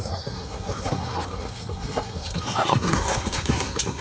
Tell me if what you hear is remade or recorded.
remade